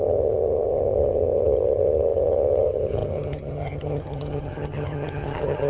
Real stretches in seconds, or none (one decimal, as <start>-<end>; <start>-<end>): none